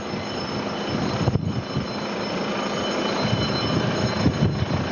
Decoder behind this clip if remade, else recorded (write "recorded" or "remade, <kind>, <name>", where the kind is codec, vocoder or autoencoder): recorded